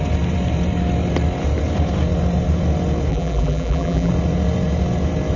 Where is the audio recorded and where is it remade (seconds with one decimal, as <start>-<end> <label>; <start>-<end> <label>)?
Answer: 0.0-3.1 recorded; 3.1-4.1 remade; 4.1-5.4 recorded